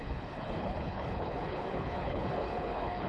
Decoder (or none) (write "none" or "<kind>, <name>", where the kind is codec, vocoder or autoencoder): codec, HILCodec